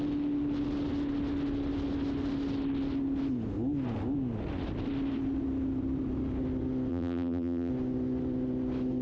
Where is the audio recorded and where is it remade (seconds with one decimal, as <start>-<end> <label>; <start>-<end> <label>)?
0.0-6.9 recorded; 6.9-7.7 remade; 7.7-9.0 recorded